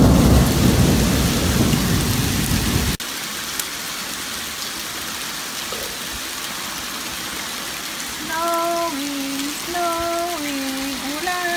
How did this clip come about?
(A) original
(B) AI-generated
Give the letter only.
A